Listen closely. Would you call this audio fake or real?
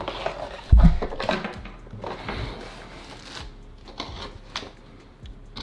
real